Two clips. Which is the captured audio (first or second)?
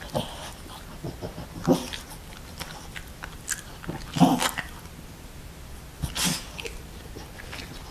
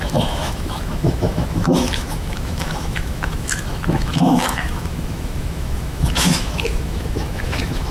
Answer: first